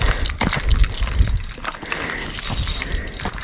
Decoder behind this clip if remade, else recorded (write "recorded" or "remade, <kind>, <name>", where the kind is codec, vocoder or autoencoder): recorded